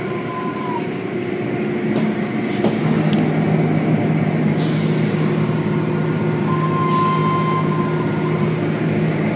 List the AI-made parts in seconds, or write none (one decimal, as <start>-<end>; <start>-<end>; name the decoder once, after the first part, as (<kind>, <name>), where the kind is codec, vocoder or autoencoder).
none